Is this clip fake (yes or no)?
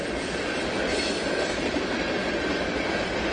no